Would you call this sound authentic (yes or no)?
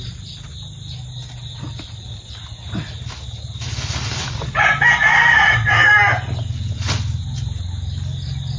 yes